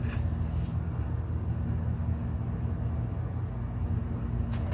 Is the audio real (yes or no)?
yes